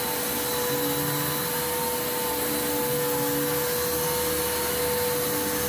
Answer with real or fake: real